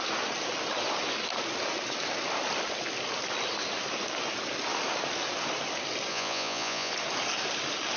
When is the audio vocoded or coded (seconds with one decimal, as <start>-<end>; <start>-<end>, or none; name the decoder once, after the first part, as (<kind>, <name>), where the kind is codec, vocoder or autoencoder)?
6.1-6.9 (vocoder, Vocos)

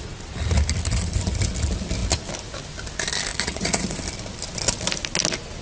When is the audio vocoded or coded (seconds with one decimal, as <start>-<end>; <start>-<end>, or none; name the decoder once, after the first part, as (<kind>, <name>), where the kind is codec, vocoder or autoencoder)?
3.3-4.0 (vocoder, Vocos)